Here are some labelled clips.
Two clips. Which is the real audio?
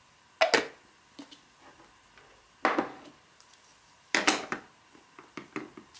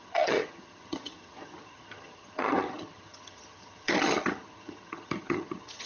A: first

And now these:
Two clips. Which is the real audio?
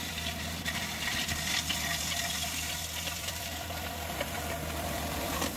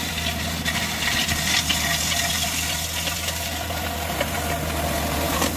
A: second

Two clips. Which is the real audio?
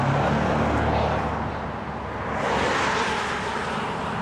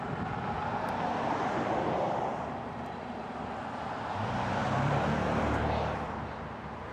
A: first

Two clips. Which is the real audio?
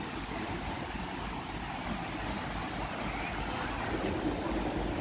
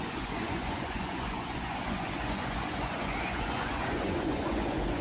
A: first